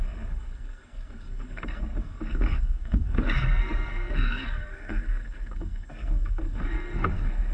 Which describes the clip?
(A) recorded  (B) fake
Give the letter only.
B